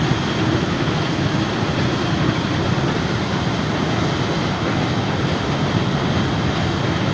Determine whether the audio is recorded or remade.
recorded